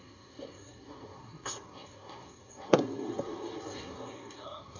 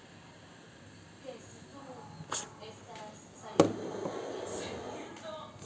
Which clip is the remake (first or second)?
first